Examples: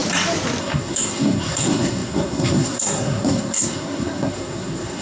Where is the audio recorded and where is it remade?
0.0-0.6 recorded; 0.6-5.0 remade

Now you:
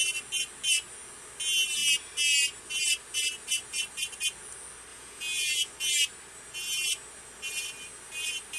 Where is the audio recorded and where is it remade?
0.0-4.9 recorded; 4.9-5.7 remade; 5.7-8.6 recorded

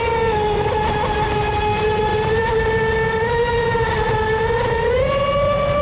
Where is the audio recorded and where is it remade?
0.0-5.8 recorded

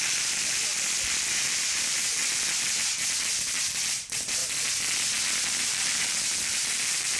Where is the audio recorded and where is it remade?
0.0-0.7 remade; 0.7-1.3 recorded; 1.3-2.1 remade; 2.1-3.2 recorded; 3.2-4.4 remade; 4.4-5.5 recorded; 5.5-7.2 remade

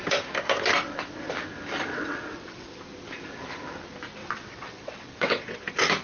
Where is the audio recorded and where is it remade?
0.0-1.9 recorded; 1.9-2.8 remade; 2.8-4.2 recorded; 4.2-5.6 remade; 5.6-6.0 recorded